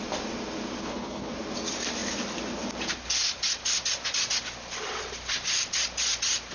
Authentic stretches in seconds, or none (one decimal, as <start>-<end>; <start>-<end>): 0.0-0.8; 1.3-6.5